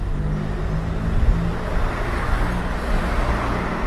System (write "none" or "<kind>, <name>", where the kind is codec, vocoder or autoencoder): none